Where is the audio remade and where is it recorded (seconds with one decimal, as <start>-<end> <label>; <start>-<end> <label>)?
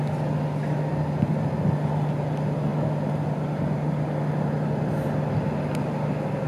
0.0-6.5 recorded